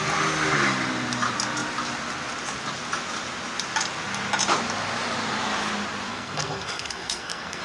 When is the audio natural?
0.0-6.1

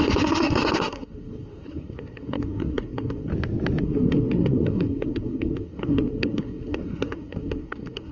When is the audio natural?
3.3-3.8

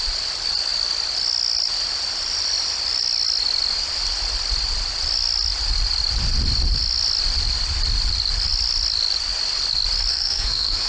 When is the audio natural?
0.0-10.1

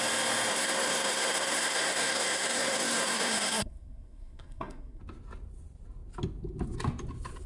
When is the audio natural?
0.0-0.5; 5.0-7.5

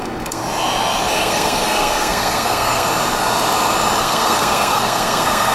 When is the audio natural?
0.4-1.2; 2.9-4.0

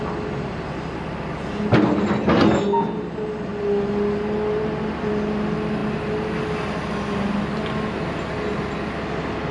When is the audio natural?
0.0-9.5